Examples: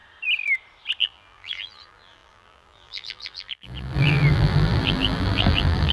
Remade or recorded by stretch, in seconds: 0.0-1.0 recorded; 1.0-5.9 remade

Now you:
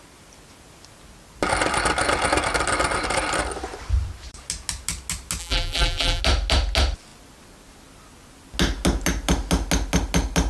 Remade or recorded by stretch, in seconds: 0.0-5.4 recorded; 5.4-6.2 remade; 6.2-10.5 recorded

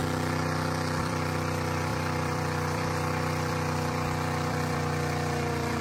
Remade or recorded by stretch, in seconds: 0.0-1.0 recorded; 1.0-5.8 remade

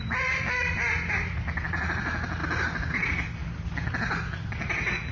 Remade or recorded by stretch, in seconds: 0.0-2.4 remade; 2.4-2.9 recorded; 2.9-3.4 remade; 3.4-4.1 recorded; 4.1-5.1 remade

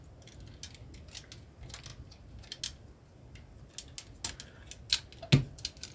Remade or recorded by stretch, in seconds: 0.0-5.9 recorded

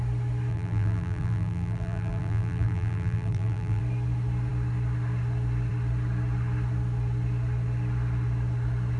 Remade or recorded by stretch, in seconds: 0.0-0.5 recorded; 0.5-3.8 remade; 3.8-9.0 recorded

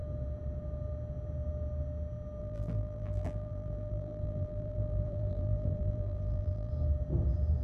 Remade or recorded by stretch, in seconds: 0.0-2.4 recorded; 2.4-6.7 remade; 6.7-7.6 recorded